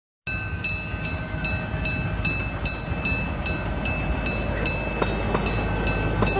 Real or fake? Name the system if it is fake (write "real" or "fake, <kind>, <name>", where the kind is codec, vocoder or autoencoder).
real